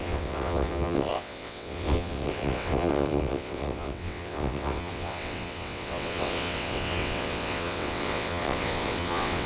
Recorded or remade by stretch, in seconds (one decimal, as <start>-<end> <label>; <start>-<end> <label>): 0.0-9.5 remade